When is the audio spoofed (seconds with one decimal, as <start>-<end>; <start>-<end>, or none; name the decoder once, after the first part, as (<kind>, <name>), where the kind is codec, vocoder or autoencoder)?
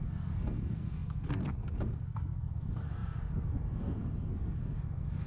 0.0-5.3 (codec, SNAC)